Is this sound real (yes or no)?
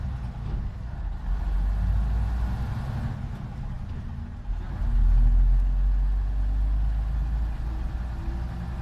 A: yes